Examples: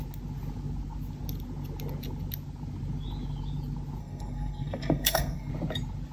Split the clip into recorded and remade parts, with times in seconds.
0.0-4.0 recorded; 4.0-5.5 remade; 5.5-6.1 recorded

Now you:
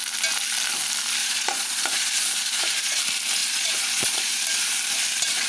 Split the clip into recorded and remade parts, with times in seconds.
0.0-1.2 recorded; 1.2-3.0 remade; 3.0-3.4 recorded; 3.4-4.4 remade; 4.4-5.5 recorded

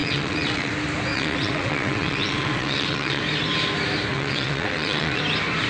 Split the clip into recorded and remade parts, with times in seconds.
0.0-0.7 remade; 0.7-1.1 recorded; 1.1-3.2 remade; 3.2-4.1 recorded; 4.1-5.2 remade; 5.2-5.7 recorded

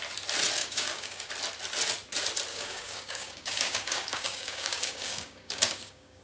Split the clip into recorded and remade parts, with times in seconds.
0.0-0.6 recorded; 0.6-1.3 remade; 1.3-2.5 recorded; 2.5-6.2 remade

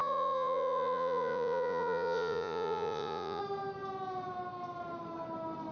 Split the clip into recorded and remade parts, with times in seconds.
0.0-3.4 remade; 3.4-5.7 recorded

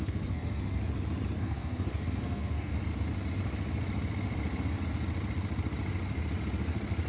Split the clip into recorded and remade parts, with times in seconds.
0.0-0.8 remade; 0.8-1.4 recorded; 1.4-2.7 remade; 2.7-7.1 recorded